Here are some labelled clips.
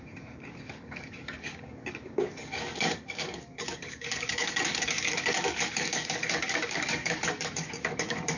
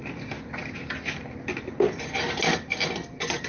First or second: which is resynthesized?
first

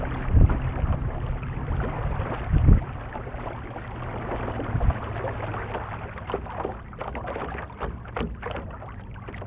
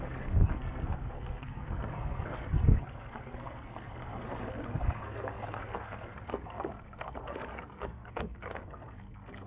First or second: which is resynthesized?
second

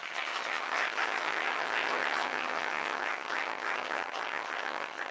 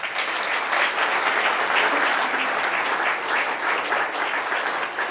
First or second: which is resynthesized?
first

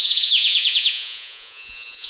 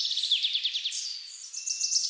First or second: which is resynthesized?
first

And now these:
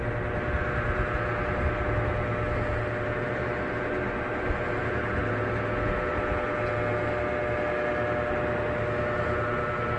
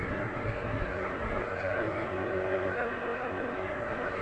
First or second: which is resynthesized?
second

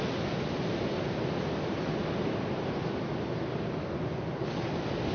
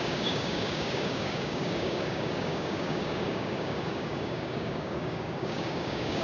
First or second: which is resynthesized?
second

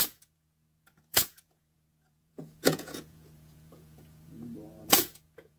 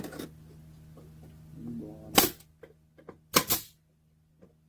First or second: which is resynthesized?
first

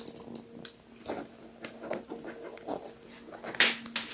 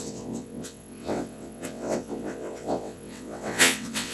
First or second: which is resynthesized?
second